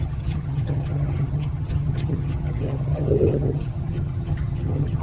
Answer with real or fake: fake